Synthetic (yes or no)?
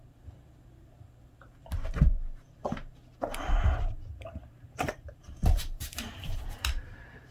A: yes